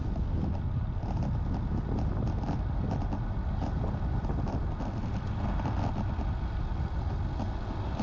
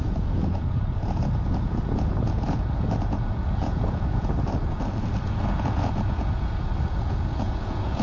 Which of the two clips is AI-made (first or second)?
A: second